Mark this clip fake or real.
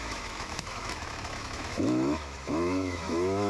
fake